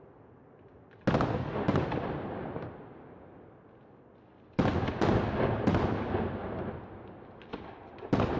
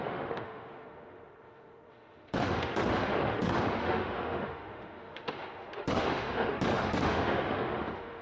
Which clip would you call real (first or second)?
first